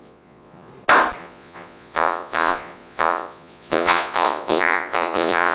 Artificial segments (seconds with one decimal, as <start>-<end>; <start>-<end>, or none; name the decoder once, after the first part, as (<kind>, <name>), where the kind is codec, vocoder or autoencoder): 0.0-0.7 (vocoder, Vocos); 1.2-5.5